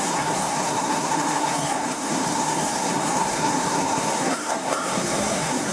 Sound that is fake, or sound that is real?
fake